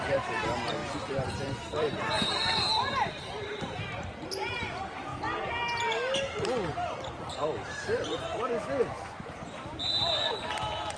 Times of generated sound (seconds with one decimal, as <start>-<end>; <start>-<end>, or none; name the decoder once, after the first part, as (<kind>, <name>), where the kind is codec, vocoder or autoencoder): 0.0-5.1 (vocoder, BigVGAN v2); 7.2-11.0